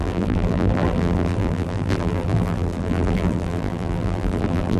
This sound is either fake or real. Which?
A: fake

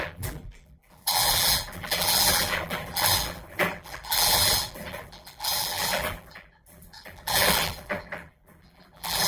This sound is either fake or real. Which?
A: fake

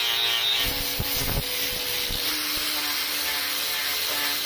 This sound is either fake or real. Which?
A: real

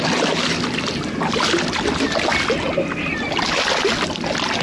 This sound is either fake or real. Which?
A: real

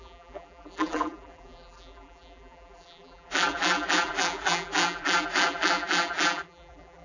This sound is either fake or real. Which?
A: fake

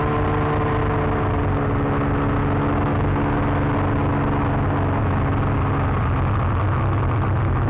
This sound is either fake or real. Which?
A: real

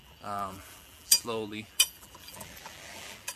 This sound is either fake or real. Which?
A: fake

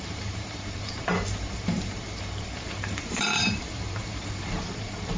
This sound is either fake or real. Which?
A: fake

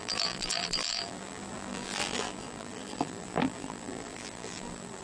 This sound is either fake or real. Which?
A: fake